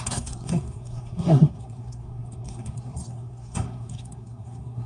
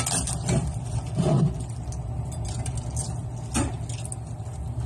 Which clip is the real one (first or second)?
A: second